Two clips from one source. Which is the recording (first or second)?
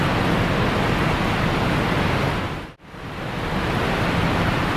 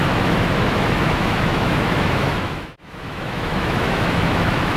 first